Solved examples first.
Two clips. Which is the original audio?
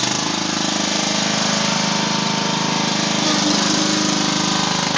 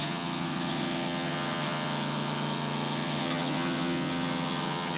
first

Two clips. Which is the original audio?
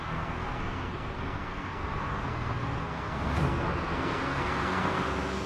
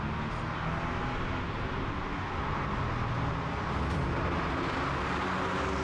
second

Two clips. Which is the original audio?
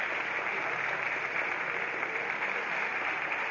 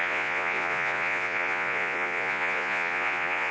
first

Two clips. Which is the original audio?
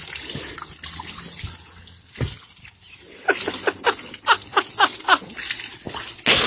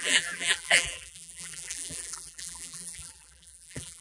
first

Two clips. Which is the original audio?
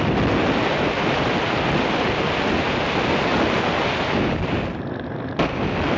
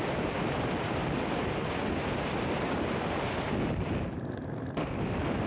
first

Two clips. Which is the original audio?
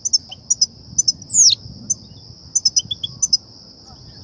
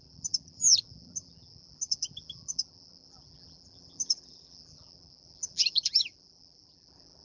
first